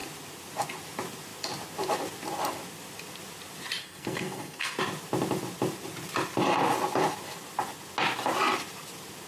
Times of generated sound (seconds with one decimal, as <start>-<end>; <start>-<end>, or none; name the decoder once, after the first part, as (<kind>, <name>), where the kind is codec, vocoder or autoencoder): 3.8-4.8 (codec, SNAC)